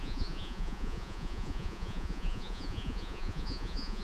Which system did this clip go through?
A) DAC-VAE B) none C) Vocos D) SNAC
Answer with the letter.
C